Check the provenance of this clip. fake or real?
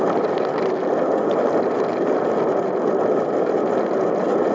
real